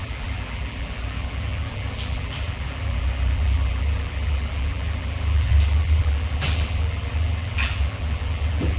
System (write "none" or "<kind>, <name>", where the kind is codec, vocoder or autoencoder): vocoder, BigVGAN v2